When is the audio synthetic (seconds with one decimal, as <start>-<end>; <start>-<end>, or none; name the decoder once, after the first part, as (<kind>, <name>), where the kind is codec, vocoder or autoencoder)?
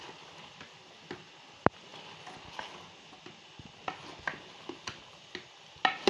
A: none